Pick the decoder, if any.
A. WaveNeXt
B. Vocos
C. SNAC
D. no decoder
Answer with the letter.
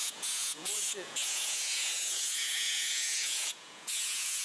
B